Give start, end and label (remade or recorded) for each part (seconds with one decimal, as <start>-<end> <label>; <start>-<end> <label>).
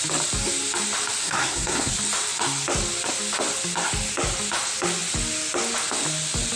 0.0-1.2 recorded; 1.2-1.9 remade; 1.9-6.6 recorded